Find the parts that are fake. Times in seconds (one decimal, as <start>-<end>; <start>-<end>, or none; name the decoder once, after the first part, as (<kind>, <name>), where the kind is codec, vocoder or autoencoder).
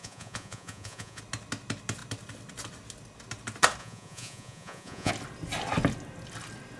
0.0-1.2 (vocoder, Vocos); 3.8-5.1